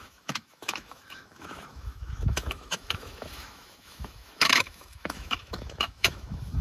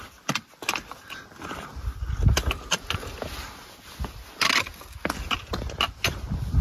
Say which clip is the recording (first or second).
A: second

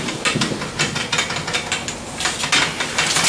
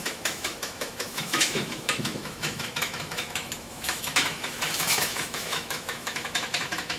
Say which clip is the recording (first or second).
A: first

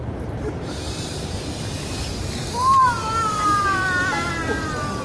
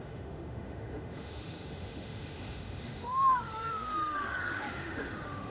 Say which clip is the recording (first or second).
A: first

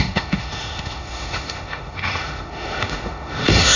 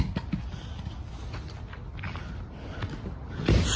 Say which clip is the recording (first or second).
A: second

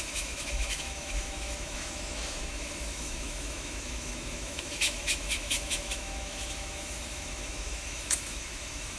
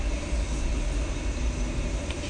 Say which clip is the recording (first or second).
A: second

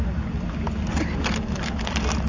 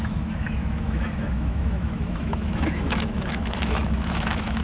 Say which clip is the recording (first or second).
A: first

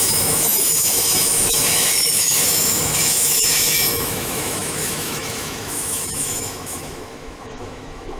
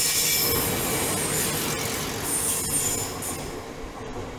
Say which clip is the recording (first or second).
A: second